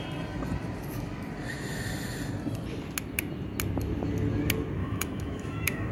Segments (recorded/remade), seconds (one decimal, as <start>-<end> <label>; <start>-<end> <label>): 0.0-4.8 recorded; 4.8-5.9 remade